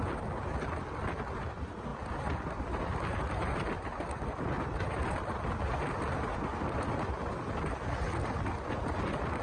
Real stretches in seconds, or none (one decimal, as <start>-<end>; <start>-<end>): 0.0-9.4